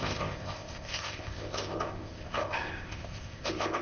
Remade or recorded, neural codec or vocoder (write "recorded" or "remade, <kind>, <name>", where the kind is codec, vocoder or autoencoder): remade, codec, ZipCodec